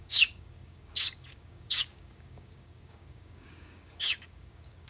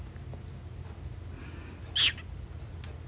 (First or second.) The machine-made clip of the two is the first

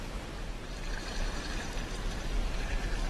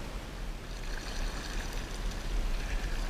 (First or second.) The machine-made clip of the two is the first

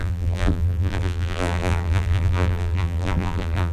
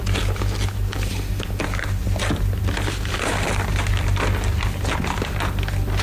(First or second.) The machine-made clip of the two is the first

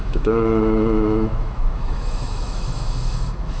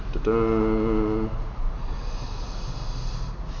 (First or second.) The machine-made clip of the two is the first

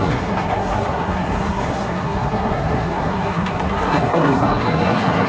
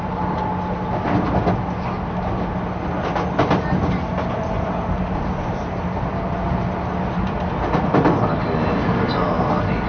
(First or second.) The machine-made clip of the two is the first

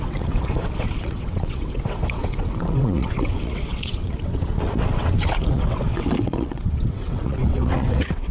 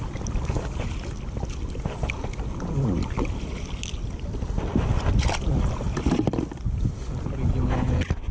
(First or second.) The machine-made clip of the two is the first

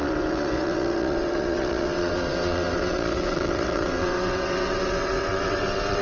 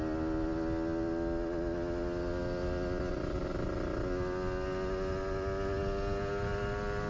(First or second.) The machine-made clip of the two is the first